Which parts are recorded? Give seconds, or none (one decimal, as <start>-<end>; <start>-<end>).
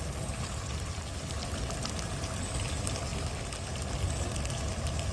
0.0-5.1